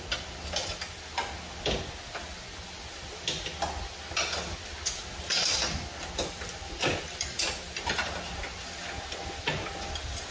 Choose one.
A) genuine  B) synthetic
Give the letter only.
A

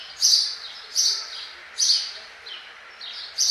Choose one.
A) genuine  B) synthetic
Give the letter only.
B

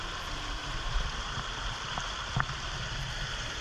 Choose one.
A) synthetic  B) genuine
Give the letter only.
A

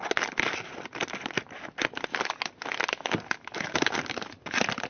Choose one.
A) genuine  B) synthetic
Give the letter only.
A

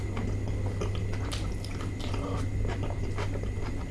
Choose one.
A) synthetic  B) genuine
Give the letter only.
B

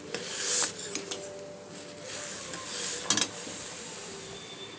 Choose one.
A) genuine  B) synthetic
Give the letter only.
A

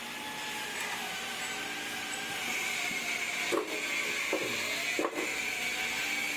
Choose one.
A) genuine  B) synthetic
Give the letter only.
A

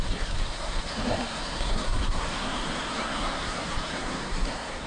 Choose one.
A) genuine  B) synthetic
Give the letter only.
B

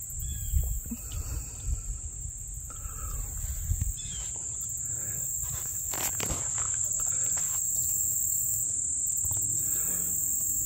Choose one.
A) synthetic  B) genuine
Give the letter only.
B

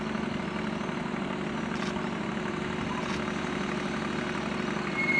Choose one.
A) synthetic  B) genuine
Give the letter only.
B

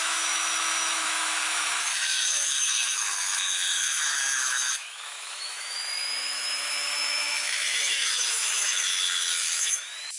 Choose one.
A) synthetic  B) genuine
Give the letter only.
A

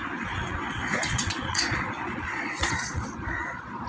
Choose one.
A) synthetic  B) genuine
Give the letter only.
A